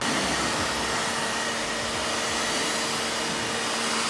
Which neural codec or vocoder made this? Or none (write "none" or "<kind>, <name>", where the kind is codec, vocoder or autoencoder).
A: none